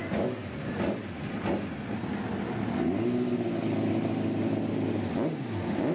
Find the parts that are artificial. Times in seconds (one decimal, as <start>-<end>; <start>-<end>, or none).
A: none